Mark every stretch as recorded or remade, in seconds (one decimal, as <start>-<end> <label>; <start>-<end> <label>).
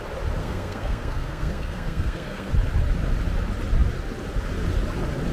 0.0-0.4 recorded; 0.4-2.5 remade; 2.5-5.3 recorded